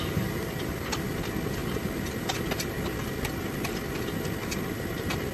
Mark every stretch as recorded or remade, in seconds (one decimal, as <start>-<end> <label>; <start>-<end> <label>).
0.0-5.3 recorded